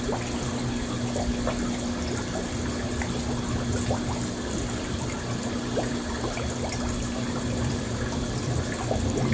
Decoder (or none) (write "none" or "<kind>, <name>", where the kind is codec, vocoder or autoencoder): none